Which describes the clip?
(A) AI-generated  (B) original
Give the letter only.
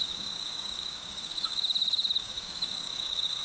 A